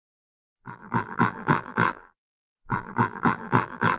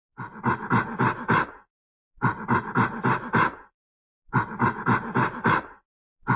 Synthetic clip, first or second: first